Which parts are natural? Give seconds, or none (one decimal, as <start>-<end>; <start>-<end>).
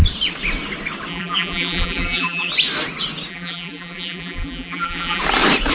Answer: 0.0-1.1; 2.5-3.3; 5.2-5.7